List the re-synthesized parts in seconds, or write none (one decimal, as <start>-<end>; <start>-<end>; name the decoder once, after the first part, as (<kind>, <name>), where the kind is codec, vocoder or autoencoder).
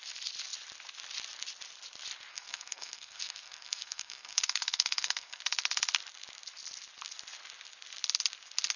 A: 2.3-5.4 (codec, SNAC)